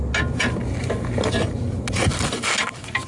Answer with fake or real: real